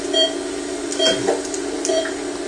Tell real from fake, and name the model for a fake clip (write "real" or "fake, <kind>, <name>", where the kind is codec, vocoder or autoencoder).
real